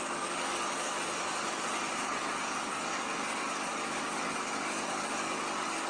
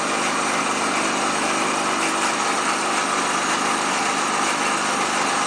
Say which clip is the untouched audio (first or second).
second